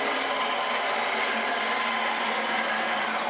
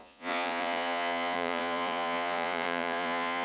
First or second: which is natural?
first